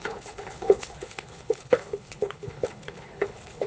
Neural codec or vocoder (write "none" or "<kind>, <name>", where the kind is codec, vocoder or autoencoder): codec, HILCodec